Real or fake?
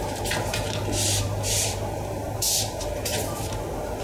real